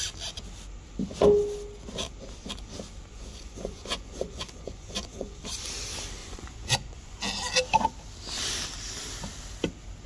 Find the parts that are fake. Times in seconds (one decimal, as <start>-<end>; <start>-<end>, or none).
3.1-5.4; 6.2-7.2